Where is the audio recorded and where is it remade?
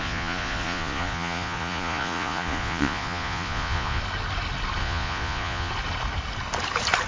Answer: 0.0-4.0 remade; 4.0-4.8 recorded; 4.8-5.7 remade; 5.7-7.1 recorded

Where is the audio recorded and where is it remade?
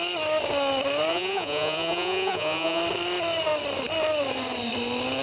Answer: 0.0-1.1 recorded; 1.1-2.8 remade; 2.8-5.2 recorded